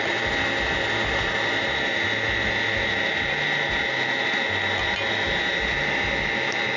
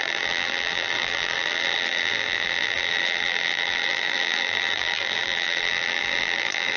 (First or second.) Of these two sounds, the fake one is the second